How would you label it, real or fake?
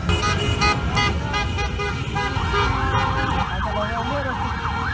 real